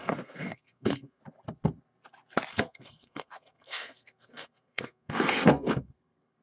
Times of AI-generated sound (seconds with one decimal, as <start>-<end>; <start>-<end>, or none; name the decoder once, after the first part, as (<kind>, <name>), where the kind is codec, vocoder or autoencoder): 0.0-1.2 (codec, SNAC); 2.5-6.4